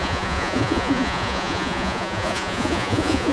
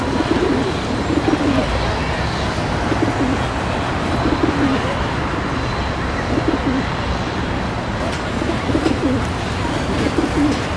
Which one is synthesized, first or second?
first